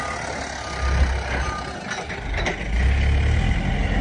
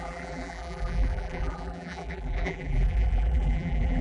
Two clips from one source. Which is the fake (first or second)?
second